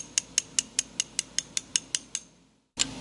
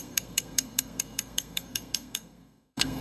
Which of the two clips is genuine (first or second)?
first